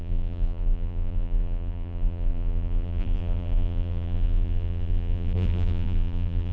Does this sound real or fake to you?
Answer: fake